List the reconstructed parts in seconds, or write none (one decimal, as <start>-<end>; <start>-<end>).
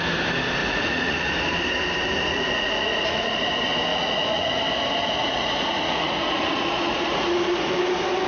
0.6-1.3; 2.3-3.5; 3.9-4.6; 5.0-7.8